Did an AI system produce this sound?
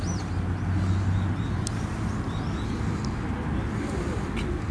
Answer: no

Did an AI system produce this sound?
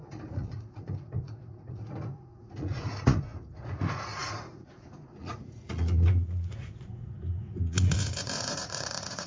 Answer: yes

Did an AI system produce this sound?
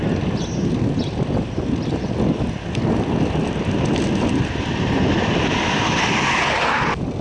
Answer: no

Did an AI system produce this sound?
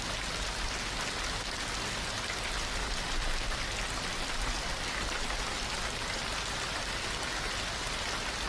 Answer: no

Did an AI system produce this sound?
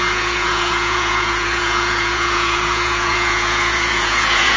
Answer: yes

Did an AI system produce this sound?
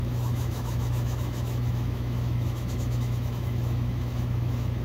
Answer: yes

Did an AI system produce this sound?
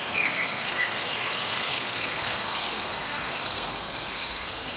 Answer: yes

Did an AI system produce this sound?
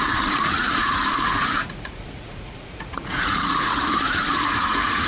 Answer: yes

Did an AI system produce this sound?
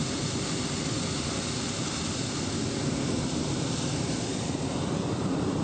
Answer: no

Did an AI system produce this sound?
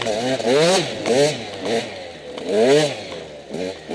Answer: no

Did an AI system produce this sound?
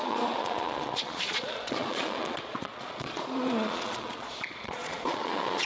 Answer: yes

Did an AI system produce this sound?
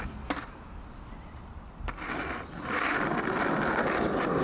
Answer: no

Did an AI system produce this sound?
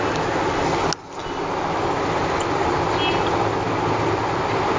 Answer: no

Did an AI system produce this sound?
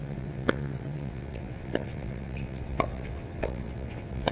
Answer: yes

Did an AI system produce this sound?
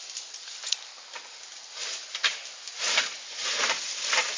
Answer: no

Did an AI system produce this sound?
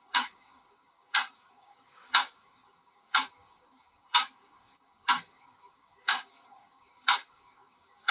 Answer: yes